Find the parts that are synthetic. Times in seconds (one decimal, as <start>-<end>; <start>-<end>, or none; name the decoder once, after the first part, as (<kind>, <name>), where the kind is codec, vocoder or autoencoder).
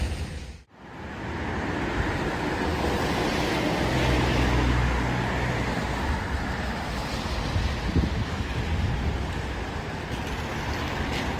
none